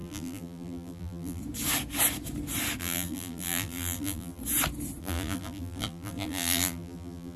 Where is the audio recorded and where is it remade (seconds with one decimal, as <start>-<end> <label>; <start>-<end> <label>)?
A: 0.0-1.4 remade; 1.4-2.8 recorded; 2.8-4.4 remade; 4.4-5.0 recorded; 5.0-7.4 remade